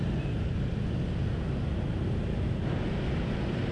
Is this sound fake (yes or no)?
no